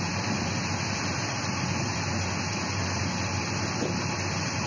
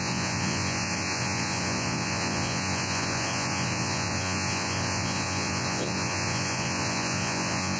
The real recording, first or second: first